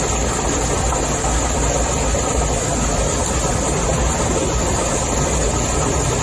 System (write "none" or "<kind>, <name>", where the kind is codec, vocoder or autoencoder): none